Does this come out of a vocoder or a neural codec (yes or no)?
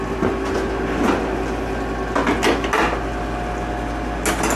no